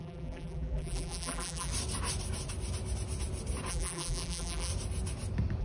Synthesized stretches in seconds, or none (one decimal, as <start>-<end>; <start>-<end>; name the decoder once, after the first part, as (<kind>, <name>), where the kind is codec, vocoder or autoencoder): 0.0-1.7 (vocoder, BigVGAN v2); 3.7-4.7